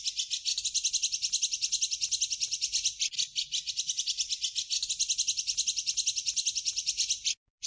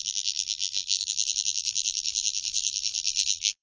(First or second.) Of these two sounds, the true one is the first